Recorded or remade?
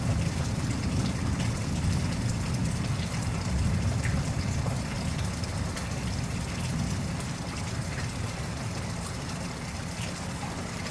recorded